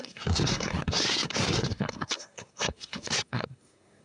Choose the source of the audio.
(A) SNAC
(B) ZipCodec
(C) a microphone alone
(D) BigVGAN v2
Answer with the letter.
A